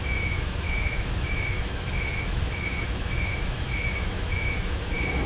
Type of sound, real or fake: fake